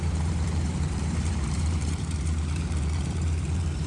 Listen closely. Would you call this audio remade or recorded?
remade